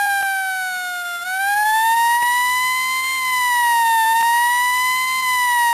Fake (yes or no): no